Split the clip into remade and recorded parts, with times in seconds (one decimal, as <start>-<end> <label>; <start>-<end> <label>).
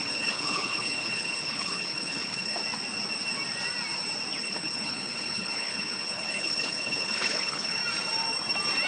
0.0-2.6 remade; 2.6-4.4 recorded; 4.4-7.8 remade; 7.8-8.9 recorded